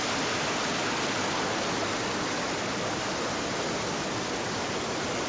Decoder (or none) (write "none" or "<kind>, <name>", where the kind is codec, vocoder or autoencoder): none